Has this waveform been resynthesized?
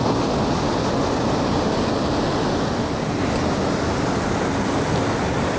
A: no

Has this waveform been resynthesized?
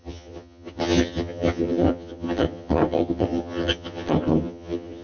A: yes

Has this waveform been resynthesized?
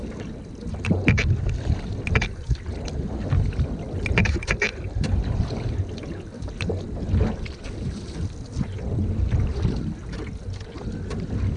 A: no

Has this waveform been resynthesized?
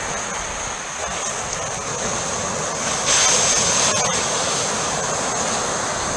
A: no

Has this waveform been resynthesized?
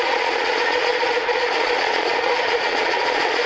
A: yes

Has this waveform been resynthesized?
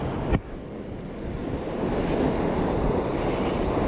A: no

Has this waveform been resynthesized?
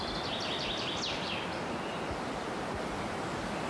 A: no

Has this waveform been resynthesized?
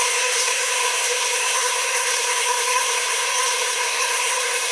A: yes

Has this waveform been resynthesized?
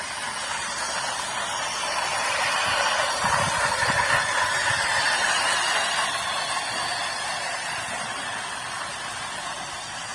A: no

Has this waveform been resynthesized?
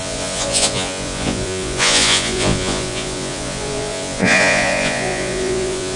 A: yes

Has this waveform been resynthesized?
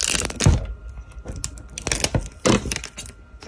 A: no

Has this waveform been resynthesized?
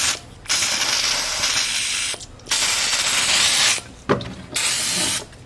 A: no